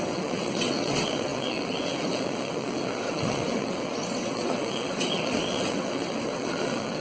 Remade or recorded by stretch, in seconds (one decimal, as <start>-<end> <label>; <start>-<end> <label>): 0.0-7.0 remade

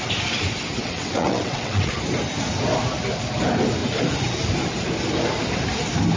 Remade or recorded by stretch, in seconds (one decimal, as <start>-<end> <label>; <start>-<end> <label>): 0.0-0.8 recorded; 0.8-1.9 remade; 1.9-6.2 recorded

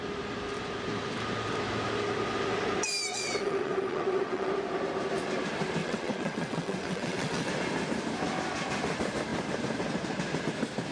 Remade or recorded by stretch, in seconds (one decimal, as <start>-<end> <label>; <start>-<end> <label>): 0.0-3.1 recorded; 3.1-4.5 remade; 4.5-5.8 recorded; 5.8-7.5 remade; 7.5-10.9 recorded

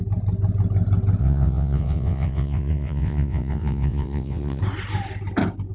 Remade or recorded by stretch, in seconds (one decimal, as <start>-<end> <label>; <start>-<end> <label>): 0.0-1.2 recorded; 1.2-4.6 remade; 4.6-5.7 recorded

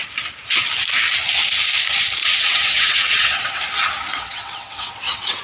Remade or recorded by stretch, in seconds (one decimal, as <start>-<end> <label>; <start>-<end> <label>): 0.0-2.2 recorded; 2.2-3.6 remade; 3.6-4.1 recorded; 4.1-5.4 remade

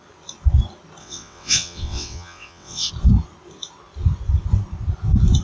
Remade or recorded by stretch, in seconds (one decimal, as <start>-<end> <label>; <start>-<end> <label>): 0.0-1.0 recorded; 1.0-2.9 remade; 2.9-5.4 recorded